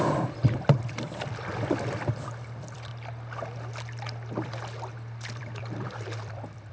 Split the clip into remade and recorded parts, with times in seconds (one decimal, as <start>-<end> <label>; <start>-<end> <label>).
0.0-2.9 remade; 2.9-5.4 recorded; 5.4-6.7 remade